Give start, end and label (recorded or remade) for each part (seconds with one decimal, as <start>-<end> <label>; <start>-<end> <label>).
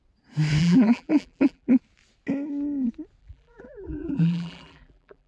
0.0-0.6 recorded; 0.6-1.7 remade; 1.7-3.2 recorded; 3.2-5.3 remade